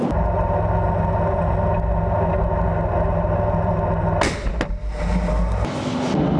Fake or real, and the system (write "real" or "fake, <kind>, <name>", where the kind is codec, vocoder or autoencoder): real